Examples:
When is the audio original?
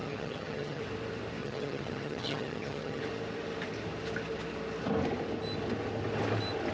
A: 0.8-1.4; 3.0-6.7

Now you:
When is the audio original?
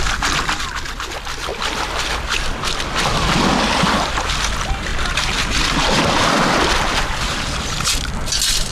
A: 0.0-8.7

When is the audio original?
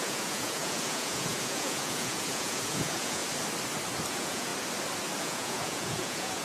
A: 3.2-4.1; 4.5-5.2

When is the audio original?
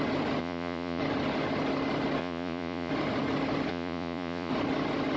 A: 0.0-0.4; 1.0-2.2; 2.9-3.7; 4.5-5.2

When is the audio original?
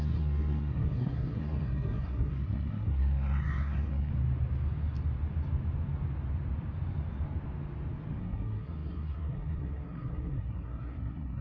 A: 4.1-8.2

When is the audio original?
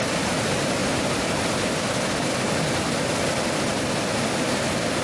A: 0.0-5.0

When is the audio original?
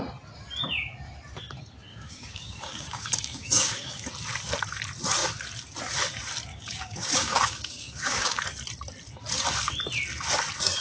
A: 0.0-1.9; 4.0-6.5; 8.4-10.8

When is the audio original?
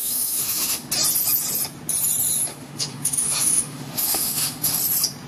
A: 0.9-2.5; 4.8-5.3